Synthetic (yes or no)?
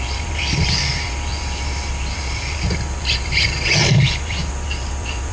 yes